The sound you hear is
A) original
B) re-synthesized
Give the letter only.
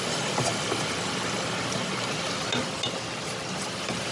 A